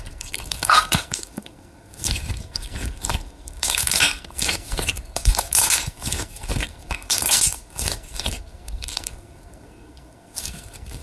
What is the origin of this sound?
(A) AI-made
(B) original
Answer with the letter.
A